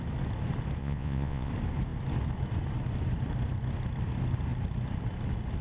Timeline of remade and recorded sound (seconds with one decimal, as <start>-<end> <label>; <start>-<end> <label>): 0.0-0.8 recorded; 0.8-1.5 remade; 1.5-5.6 recorded